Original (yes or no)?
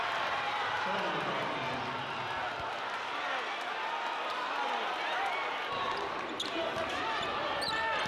yes